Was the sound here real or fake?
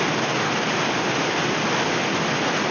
real